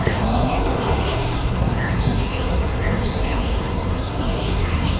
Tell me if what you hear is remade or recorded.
remade